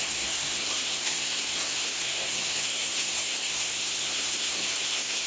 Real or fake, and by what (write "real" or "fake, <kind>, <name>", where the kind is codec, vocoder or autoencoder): fake, codec, SNAC